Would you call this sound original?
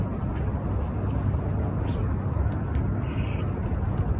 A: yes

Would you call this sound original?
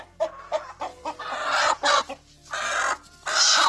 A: yes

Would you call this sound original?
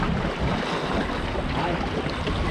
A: yes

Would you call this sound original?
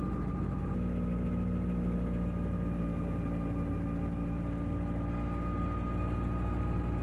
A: yes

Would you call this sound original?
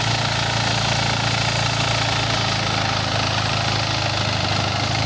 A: yes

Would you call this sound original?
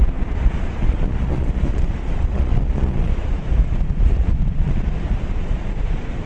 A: no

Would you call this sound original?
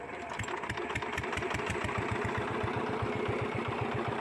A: yes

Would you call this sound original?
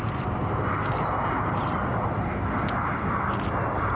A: yes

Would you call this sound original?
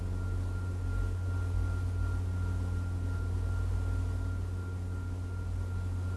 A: yes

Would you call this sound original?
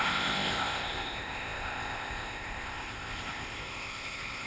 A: no